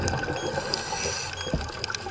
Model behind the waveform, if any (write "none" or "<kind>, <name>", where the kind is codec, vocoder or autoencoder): none